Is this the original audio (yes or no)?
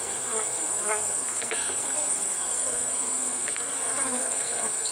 no